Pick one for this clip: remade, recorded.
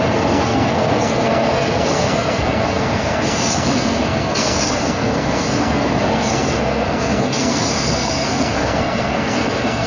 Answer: remade